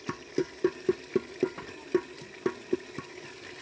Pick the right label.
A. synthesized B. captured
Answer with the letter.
B